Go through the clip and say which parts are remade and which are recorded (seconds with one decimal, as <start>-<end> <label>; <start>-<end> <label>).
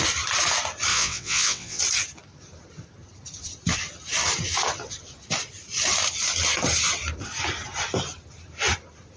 0.0-0.9 recorded; 0.9-1.8 remade; 1.8-9.2 recorded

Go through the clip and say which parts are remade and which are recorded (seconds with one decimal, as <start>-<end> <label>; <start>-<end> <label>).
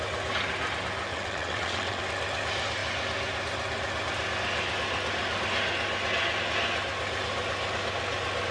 0.0-1.1 recorded; 1.1-2.0 remade; 2.0-8.5 recorded